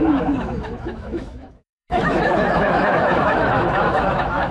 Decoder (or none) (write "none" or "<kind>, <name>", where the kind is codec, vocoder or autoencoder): autoencoder, DAC-VAE